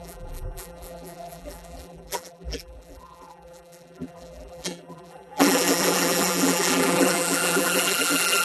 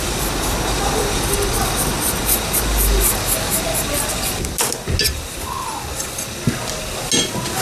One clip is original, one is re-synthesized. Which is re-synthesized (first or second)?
first